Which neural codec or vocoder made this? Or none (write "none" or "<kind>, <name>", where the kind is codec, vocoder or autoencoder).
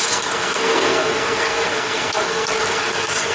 codec, SNAC